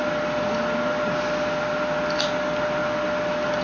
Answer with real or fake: real